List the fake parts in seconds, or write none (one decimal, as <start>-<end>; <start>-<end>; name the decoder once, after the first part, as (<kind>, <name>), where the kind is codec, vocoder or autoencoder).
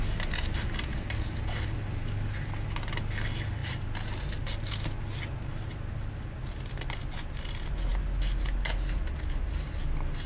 none